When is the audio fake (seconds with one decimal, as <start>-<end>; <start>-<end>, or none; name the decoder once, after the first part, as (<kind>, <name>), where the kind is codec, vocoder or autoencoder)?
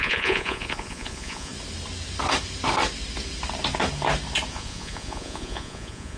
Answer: 0.0-1.5 (vocoder, Vocos); 4.5-6.2